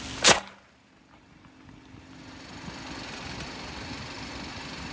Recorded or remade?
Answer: recorded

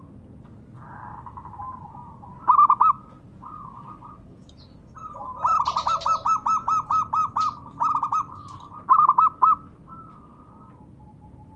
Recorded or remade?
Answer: recorded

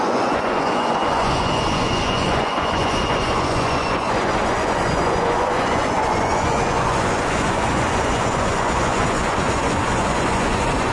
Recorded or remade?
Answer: remade